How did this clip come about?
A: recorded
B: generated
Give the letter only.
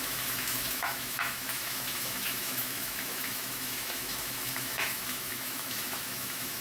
B